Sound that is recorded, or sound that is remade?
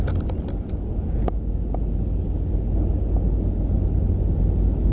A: recorded